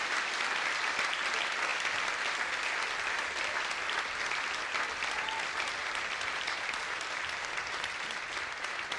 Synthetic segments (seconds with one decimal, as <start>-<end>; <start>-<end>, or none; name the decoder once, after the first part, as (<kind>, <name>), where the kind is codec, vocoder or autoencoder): 5.8-7.6 (vocoder, BigVGAN v2)